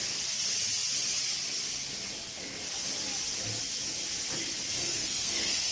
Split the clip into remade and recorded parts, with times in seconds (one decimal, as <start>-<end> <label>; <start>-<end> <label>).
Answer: 0.0-4.8 recorded; 4.8-5.7 remade